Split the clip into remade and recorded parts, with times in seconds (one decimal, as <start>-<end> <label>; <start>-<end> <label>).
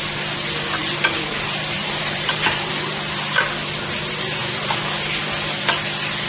0.0-0.8 recorded; 0.8-2.7 remade; 2.7-6.3 recorded